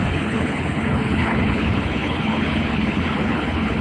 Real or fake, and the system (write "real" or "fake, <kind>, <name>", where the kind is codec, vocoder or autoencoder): fake, codec, HILCodec